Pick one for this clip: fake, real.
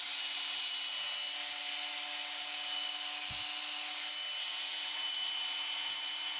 real